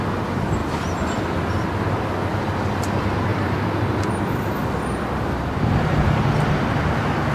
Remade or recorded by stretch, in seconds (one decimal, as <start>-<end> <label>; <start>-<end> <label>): 0.0-0.6 recorded; 0.6-1.2 remade; 1.2-3.3 recorded; 3.3-6.8 remade; 6.8-7.3 recorded